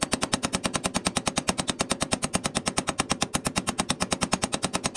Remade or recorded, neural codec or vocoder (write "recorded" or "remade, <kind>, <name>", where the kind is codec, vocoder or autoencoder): recorded